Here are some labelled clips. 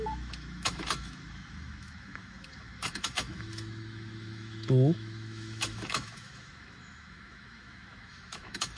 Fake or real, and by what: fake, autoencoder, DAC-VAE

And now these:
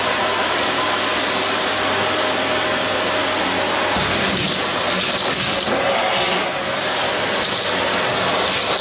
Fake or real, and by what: real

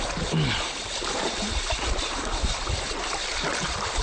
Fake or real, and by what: real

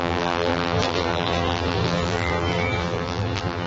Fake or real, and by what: fake, vocoder, BigVGAN v2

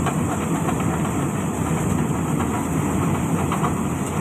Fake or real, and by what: real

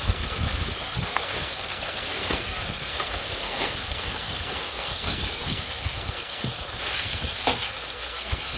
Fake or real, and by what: fake, codec, SNAC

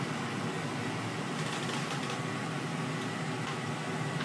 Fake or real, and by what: real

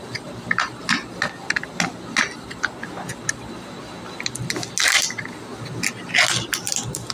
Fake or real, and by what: real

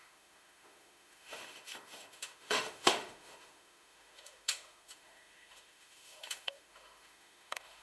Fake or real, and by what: fake, autoencoder, DAC-VAE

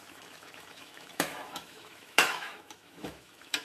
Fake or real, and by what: fake, autoencoder, DAC-VAE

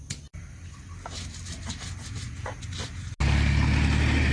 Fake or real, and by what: real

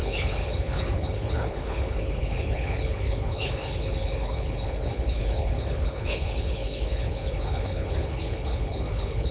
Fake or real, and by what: fake, codec, HILCodec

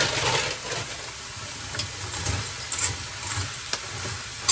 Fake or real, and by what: real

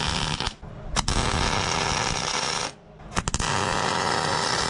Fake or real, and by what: real